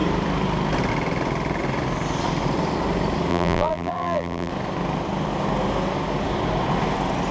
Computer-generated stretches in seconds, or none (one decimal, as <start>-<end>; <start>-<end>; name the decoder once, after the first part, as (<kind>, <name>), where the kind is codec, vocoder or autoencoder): 3.3-4.5 (vocoder, BigVGAN v2)